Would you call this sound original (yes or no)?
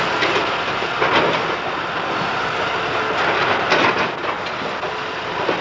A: yes